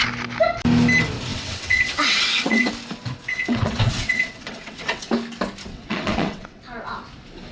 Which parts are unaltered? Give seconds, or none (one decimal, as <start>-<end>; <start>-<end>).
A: 0.0-1.3; 2.7-3.3; 5.1-5.7; 6.6-7.5